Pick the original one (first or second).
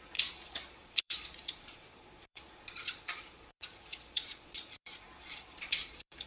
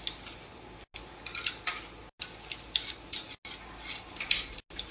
second